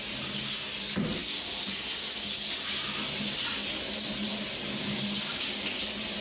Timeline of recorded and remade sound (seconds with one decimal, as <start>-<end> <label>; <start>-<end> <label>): 0.0-6.2 recorded